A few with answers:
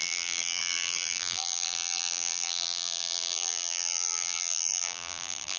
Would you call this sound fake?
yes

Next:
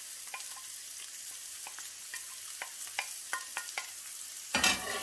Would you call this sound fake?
no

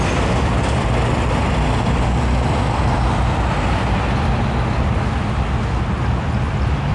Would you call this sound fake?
no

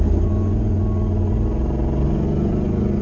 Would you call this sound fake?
no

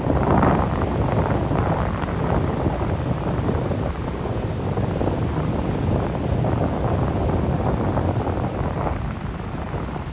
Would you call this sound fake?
yes